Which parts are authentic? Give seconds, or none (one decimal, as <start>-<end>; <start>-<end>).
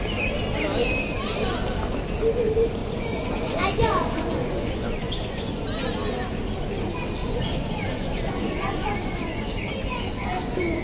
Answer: 0.0-2.8; 5.6-7.2